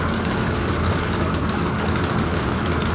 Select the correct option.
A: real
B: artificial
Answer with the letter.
B